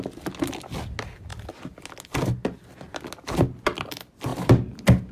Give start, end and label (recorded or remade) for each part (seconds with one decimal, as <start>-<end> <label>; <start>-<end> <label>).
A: 0.0-4.3 recorded; 4.3-5.1 remade